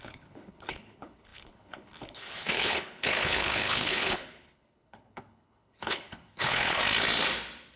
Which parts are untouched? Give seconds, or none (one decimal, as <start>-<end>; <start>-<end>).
6.8-7.8